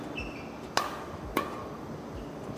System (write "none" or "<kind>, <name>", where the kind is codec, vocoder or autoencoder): none